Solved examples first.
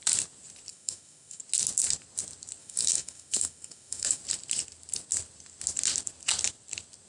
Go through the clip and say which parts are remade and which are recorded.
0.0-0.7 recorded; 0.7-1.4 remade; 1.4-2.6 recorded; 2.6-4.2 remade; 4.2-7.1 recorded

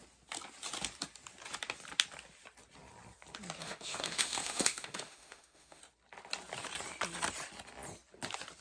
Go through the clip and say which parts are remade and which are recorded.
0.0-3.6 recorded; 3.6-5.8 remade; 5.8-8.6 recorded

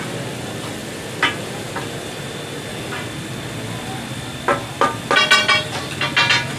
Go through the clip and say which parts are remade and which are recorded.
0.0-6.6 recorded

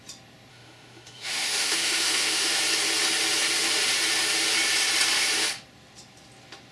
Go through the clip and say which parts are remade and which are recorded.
0.0-0.5 recorded; 0.5-2.6 remade; 2.6-6.7 recorded

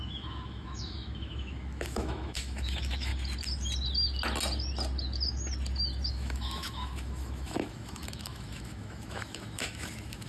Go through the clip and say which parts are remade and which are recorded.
0.0-3.1 remade; 3.1-6.1 recorded; 6.1-10.3 remade

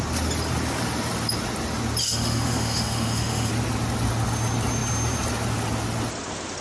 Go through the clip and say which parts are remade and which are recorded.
0.0-2.0 recorded; 2.0-3.5 remade; 3.5-6.6 recorded

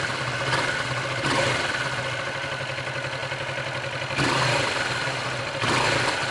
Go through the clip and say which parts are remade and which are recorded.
0.0-6.3 recorded